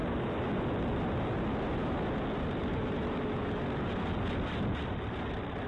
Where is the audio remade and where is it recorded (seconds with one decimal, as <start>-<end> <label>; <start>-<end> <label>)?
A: 0.0-2.6 recorded; 2.6-3.6 remade; 3.6-5.7 recorded